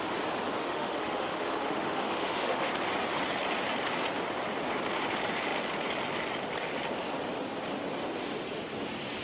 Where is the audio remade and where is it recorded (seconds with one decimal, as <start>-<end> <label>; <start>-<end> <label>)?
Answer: 0.0-0.6 recorded; 0.6-2.7 remade; 2.7-9.2 recorded

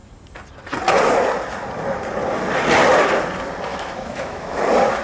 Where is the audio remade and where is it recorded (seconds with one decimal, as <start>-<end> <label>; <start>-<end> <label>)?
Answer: 0.0-3.7 recorded; 3.7-4.6 remade; 4.6-5.0 recorded